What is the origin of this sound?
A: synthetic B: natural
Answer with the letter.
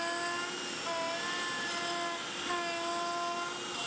B